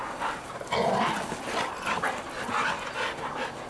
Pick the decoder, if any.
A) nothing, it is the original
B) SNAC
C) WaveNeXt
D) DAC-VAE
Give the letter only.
A